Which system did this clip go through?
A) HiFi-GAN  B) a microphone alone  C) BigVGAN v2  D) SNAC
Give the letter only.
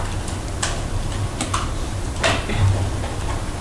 B